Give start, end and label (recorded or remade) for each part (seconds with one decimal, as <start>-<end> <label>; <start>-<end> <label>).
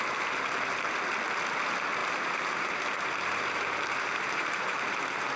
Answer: 0.0-2.0 recorded; 2.0-4.8 remade; 4.8-5.4 recorded